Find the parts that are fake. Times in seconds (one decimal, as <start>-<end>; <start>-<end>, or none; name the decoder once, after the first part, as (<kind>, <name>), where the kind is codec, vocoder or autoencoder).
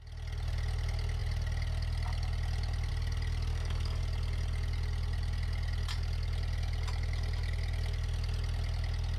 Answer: 3.5-4.0 (codec, DAC)